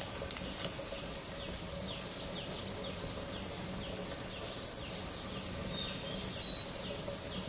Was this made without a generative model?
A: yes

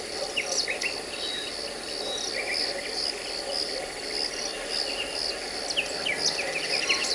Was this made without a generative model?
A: yes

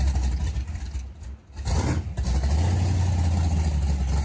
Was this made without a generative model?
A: yes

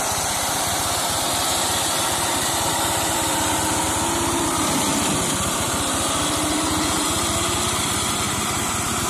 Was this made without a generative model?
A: yes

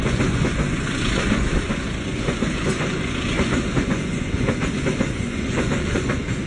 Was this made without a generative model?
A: no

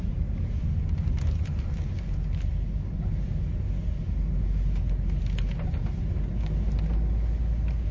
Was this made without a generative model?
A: yes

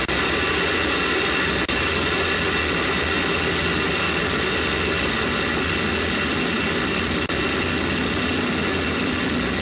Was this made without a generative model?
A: yes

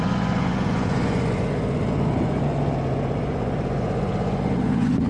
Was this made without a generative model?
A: no